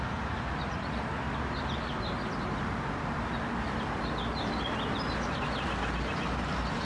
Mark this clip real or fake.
real